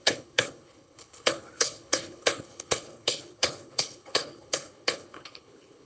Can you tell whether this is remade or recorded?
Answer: remade